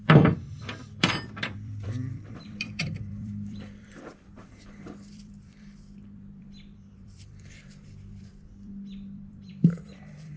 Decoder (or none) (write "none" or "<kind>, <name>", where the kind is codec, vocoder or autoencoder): vocoder, BigVGAN v2